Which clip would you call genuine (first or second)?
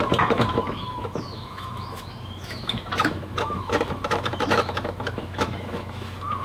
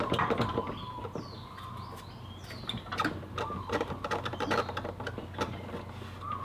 second